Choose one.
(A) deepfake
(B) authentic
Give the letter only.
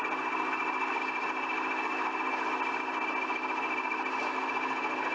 B